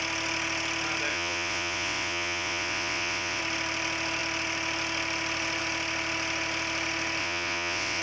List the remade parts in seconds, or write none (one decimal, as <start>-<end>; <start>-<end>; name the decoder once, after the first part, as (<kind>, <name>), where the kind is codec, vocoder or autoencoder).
1.1-3.4 (vocoder, WaveNeXt); 7.2-8.0

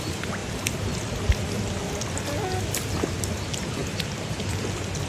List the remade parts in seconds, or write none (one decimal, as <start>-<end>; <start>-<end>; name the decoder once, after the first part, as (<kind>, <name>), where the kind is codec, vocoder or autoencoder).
3.8-4.3 (vocoder, BigVGAN v2)